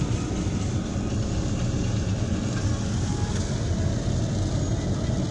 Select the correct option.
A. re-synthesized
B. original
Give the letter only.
B